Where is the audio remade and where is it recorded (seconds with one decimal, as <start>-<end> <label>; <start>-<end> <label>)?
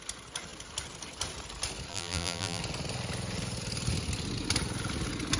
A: 0.0-1.9 recorded; 1.9-2.6 remade; 2.6-5.4 recorded